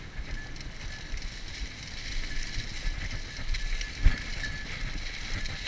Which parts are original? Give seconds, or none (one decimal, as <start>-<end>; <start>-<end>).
0.0-5.7